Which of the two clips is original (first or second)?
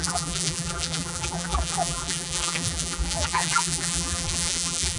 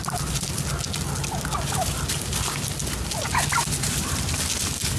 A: second